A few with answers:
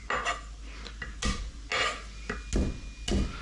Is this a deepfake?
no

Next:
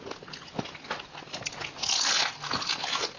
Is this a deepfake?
no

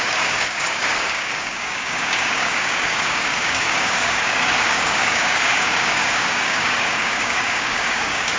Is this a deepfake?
yes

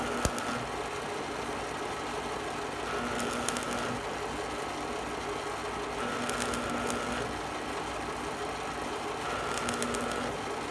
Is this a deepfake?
no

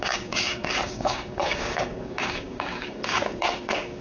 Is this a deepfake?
yes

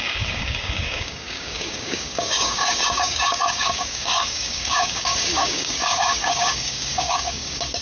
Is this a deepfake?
yes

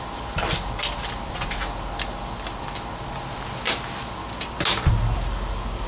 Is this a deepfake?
no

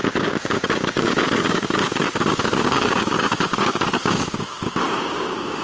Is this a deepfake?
yes